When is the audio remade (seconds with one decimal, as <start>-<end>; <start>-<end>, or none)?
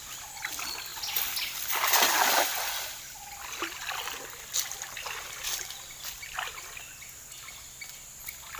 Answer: none